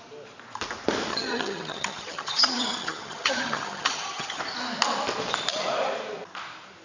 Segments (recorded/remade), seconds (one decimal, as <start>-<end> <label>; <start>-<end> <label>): 0.0-1.1 recorded; 1.1-4.4 remade; 4.4-6.8 recorded

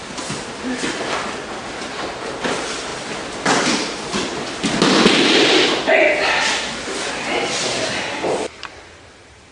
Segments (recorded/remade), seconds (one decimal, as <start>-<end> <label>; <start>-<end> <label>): 0.0-9.5 recorded

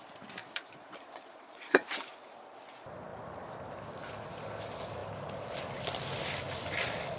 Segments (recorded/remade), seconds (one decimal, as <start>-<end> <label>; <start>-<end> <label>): 0.0-0.4 recorded; 0.4-2.0 remade; 2.0-7.2 recorded